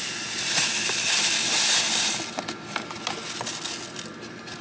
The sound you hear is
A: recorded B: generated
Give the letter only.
A